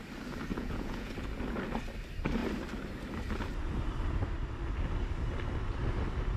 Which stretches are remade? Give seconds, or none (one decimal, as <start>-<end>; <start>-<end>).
0.5-1.1